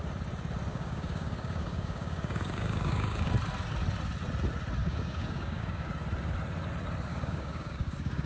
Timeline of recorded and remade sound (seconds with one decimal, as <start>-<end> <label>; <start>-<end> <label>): 0.0-0.7 recorded; 0.7-3.3 remade; 3.3-4.8 recorded; 4.8-5.9 remade; 5.9-7.1 recorded; 7.1-8.3 remade